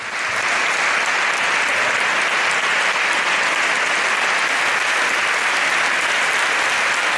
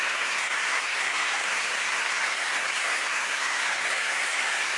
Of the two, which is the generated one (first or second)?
second